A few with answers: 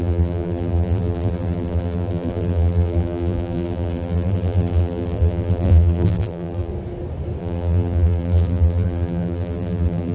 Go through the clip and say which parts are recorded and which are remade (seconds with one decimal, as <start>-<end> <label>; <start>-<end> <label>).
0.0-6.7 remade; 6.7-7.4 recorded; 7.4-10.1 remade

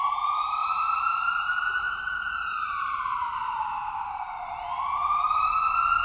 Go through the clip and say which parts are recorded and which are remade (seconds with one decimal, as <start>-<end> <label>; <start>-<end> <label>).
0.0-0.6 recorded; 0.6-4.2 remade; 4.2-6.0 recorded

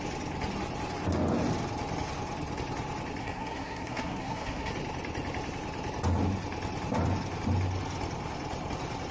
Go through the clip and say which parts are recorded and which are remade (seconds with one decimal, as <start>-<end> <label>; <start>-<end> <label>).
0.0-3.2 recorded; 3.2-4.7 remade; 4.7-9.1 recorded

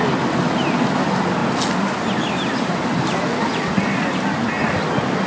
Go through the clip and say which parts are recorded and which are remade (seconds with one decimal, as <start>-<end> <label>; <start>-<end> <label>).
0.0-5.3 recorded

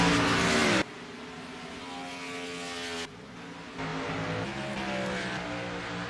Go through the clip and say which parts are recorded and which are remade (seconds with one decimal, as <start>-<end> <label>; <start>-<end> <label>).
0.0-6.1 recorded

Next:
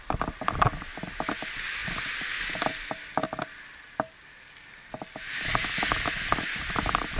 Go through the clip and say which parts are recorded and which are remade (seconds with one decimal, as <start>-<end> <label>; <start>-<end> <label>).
0.0-7.2 recorded